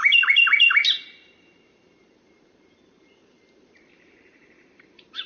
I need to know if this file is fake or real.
fake